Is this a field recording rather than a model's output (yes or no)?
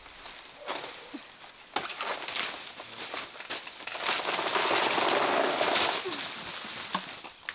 yes